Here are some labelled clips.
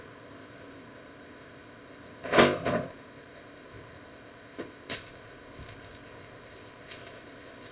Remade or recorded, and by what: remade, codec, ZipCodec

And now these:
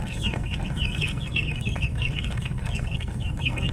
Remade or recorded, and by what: remade, codec, SNAC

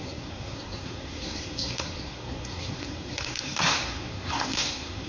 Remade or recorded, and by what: remade, codec, SNAC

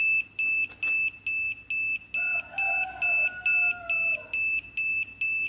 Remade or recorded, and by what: recorded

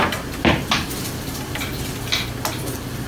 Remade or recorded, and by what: recorded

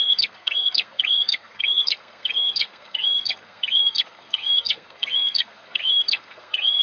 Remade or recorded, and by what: remade, codec, SNAC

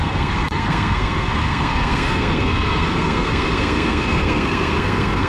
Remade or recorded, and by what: remade, codec, SNAC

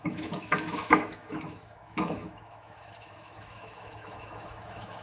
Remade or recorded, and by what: remade, autoencoder, DAC-VAE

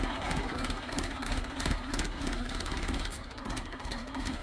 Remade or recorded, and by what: remade, codec, SNAC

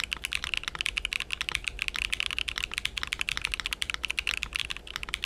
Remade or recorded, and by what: recorded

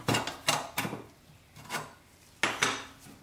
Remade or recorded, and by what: recorded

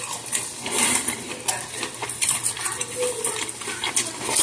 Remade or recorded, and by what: recorded